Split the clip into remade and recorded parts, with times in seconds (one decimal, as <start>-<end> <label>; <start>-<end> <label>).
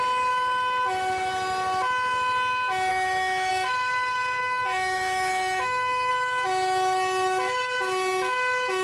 0.0-2.9 recorded; 2.9-3.5 remade; 3.5-4.4 recorded; 4.4-6.1 remade; 6.1-8.8 recorded